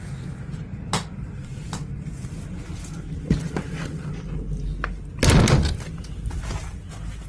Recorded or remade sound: recorded